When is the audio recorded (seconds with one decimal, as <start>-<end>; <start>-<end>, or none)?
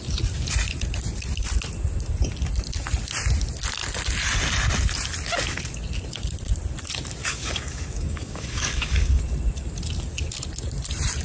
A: 0.0-7.2; 9.2-11.2